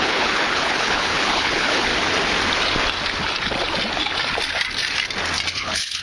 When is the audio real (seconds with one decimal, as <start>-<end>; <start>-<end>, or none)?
1.9-5.5